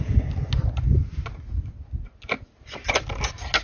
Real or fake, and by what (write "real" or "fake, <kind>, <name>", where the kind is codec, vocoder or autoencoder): real